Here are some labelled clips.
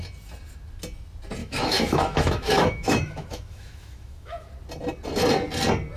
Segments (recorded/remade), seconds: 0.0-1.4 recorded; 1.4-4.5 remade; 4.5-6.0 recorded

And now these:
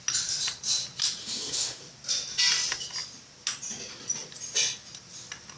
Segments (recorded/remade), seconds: 0.0-1.2 recorded; 1.2-1.8 remade; 1.8-5.6 recorded

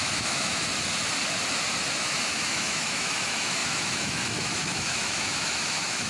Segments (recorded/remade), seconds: 0.0-0.7 remade; 0.7-1.9 recorded; 1.9-6.1 remade